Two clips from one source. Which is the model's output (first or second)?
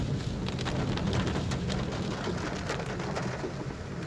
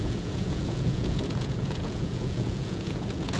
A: second